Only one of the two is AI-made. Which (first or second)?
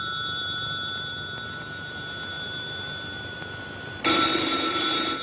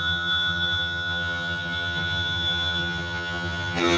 second